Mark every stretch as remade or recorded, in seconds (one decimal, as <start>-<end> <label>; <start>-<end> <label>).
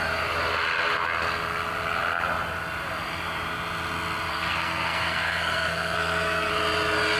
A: 0.0-4.3 recorded; 4.3-6.5 remade; 6.5-7.2 recorded